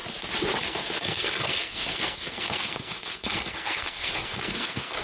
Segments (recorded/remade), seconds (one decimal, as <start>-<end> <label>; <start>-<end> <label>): 0.0-0.6 recorded; 0.6-5.0 remade